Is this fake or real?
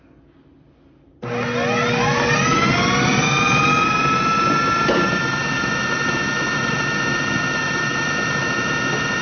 real